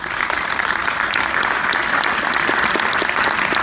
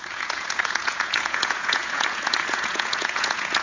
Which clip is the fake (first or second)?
second